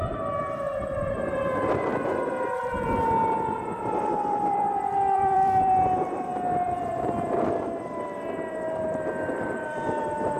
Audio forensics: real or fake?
fake